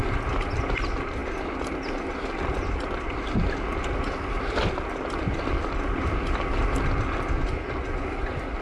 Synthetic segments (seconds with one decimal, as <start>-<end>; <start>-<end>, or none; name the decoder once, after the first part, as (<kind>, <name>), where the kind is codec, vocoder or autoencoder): none